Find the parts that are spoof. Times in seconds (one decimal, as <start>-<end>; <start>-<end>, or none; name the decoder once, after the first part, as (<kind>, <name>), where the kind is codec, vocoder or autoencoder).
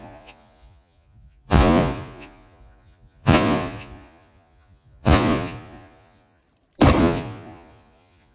0.0-6.4 (vocoder, Vocos); 7.0-8.3